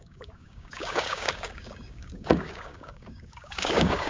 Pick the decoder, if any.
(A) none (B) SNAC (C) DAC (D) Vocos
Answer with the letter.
C